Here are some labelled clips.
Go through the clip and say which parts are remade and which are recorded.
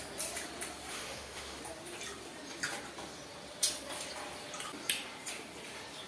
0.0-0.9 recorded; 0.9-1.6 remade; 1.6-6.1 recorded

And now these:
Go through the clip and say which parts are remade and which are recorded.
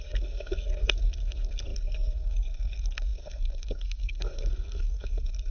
0.0-5.5 remade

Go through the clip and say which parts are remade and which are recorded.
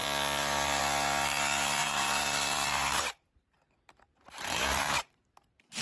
0.0-1.8 recorded; 1.8-5.3 remade; 5.3-5.8 recorded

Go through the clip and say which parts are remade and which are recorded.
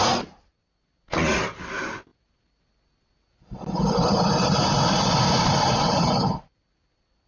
0.0-7.3 recorded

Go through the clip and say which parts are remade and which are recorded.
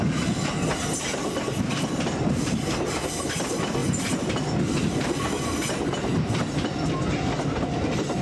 0.0-8.2 recorded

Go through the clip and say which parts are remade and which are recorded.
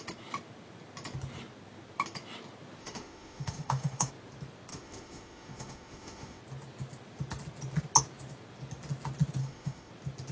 0.0-2.8 recorded; 2.8-4.1 remade; 4.1-4.7 recorded; 4.7-6.4 remade; 6.4-9.4 recorded; 9.4-9.9 remade; 9.9-10.3 recorded